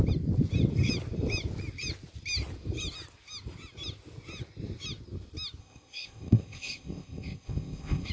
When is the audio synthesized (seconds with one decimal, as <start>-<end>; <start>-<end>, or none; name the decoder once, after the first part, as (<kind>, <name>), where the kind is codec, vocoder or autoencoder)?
5.6-8.1 (codec, ZipCodec)